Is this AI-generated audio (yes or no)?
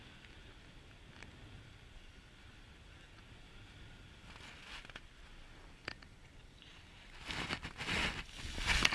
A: no